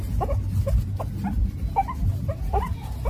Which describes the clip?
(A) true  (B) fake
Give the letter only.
A